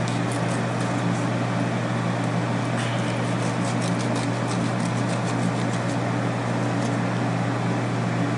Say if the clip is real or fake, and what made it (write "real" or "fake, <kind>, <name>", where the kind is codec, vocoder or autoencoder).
real